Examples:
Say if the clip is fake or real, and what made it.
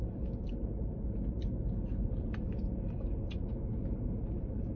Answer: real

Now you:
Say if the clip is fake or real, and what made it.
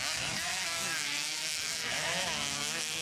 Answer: fake, autoencoder, DAC-VAE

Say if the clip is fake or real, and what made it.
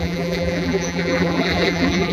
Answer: fake, vocoder, BigVGAN v2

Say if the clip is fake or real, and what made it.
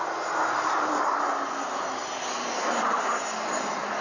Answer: real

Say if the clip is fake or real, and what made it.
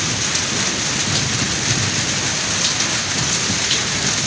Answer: real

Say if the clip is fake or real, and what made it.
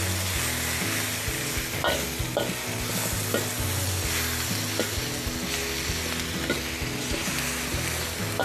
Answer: real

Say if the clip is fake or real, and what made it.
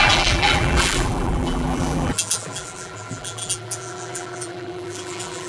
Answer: fake, vocoder, BigVGAN v2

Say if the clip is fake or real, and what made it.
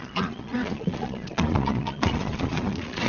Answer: fake, vocoder, Vocos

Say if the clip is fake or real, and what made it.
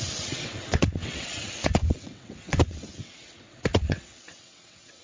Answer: fake, vocoder, WaveNeXt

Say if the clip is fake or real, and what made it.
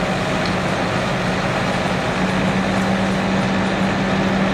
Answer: real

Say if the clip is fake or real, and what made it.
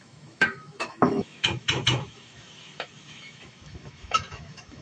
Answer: fake, autoencoder, DAC-VAE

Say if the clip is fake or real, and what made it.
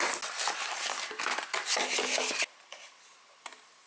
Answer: real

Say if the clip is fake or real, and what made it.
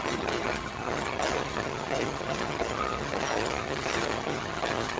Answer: fake, vocoder, HiFi-GAN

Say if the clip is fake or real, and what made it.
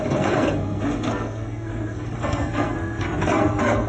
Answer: fake, codec, SNAC